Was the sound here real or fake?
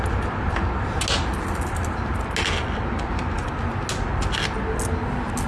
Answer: real